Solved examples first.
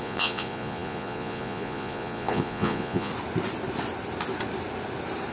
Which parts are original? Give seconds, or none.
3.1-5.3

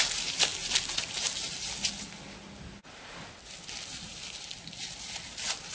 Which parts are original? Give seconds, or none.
0.0-5.7

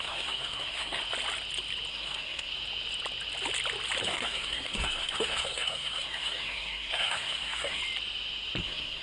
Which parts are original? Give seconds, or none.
1.0-1.9; 2.5-4.0; 7.8-8.6

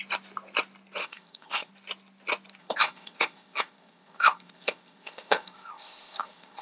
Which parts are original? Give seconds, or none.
0.0-1.0; 1.7-2.6

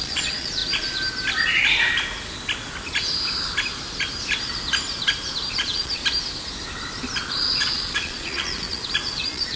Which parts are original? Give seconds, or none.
0.6-5.5; 6.0-7.3

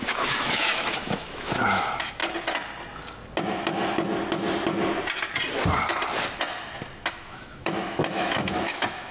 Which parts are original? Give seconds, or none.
2.2-7.1

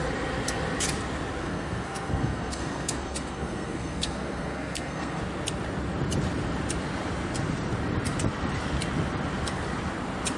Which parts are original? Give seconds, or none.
0.0-1.4; 5.2-10.4